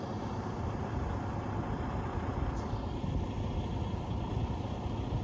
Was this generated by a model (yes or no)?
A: no